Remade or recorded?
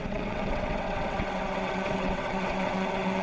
remade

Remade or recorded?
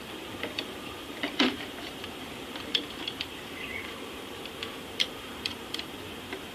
remade